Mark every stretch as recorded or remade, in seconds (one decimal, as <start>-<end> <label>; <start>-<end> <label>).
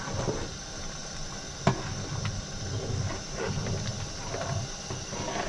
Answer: 0.0-5.5 recorded